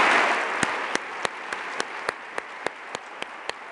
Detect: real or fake real